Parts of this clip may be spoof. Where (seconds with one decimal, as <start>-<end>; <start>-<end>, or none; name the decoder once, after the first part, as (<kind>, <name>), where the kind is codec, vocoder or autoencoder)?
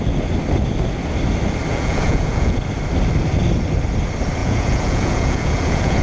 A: 1.7-2.6 (vocoder, Vocos); 4.4-6.0